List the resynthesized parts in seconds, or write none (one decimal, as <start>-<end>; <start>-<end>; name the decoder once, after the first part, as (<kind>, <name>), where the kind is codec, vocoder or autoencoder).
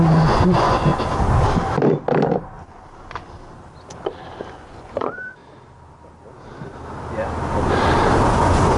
0.0-0.9 (vocoder, Vocos); 4.5-5.4; 8.3-8.8